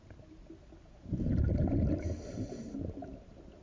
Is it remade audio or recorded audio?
recorded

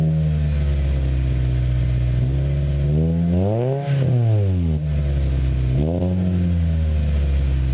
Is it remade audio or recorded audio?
recorded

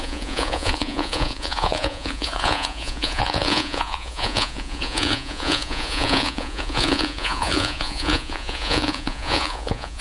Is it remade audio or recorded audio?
remade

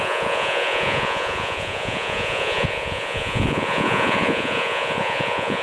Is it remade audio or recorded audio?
remade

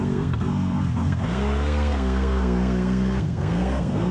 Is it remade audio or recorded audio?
remade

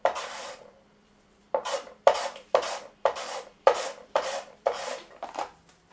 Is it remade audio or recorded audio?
remade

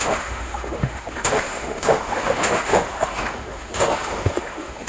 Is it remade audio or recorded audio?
remade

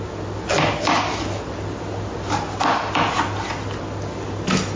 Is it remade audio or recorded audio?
recorded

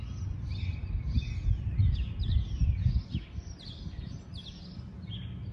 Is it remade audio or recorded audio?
recorded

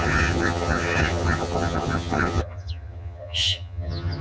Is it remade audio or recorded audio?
remade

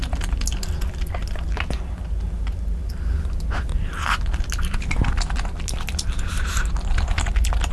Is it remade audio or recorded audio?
recorded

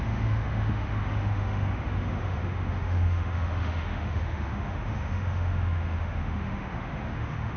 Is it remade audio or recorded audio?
remade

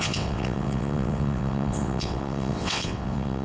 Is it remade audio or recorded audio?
remade